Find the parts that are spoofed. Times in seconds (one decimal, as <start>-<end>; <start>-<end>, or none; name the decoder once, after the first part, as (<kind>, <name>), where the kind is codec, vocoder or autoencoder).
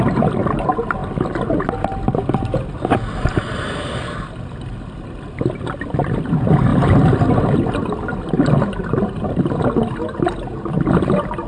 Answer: none